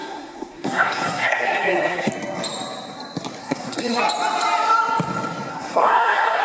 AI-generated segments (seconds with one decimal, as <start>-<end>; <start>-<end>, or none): 0.0-2.1; 3.4-4.0; 5.5-6.4